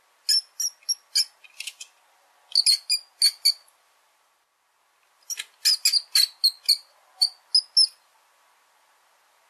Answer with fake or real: real